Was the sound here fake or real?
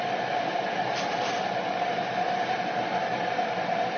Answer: real